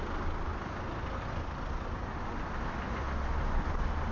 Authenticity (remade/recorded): recorded